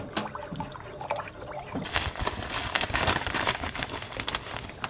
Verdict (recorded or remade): recorded